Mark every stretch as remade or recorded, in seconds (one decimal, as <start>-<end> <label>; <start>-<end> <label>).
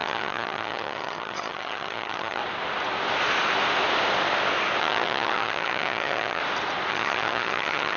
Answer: 0.0-2.4 remade; 2.4-4.8 recorded; 4.8-6.4 remade; 6.4-6.9 recorded; 6.9-8.0 remade